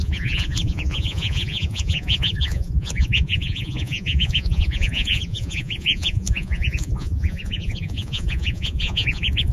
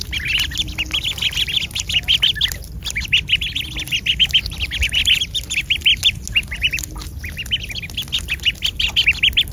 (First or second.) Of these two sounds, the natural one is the second